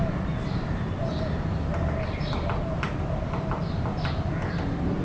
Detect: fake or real real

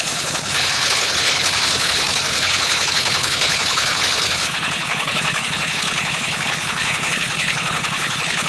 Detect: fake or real fake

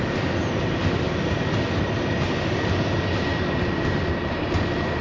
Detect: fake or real real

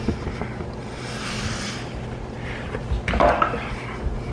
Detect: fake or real real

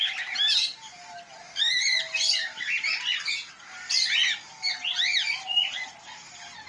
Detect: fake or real real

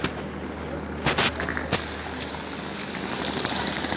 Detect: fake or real real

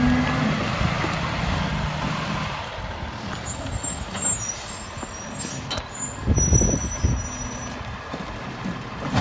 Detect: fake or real real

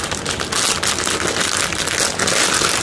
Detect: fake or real real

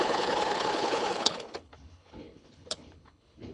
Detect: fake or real fake